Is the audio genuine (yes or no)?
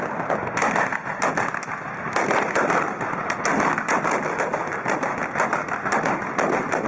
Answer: yes